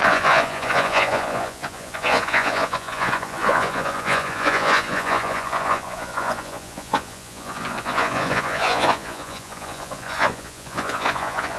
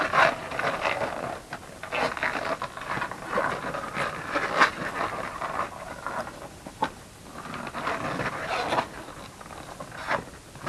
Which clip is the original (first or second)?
second